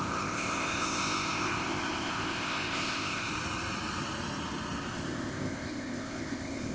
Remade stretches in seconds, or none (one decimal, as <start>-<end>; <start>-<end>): 0.0-3.3; 4.9-6.7